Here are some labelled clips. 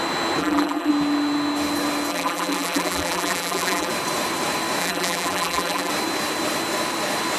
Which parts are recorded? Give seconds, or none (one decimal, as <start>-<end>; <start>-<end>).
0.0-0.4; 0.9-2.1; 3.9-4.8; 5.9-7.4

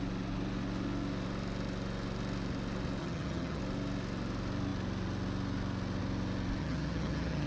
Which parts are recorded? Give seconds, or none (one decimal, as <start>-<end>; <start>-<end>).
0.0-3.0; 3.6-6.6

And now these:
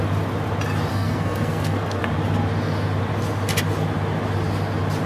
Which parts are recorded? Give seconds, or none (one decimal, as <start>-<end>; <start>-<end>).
0.0-0.9; 2.0-5.1

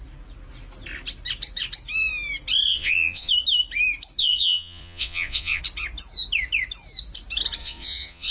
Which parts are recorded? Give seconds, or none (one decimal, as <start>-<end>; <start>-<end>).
0.0-2.7; 3.3-4.2; 5.6-7.6

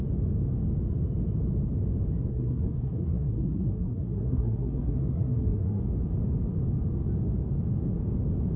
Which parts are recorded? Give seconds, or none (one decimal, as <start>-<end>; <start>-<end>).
0.0-2.3; 5.8-8.6